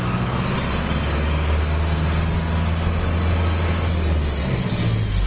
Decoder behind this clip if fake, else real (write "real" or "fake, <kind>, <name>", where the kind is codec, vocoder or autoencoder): real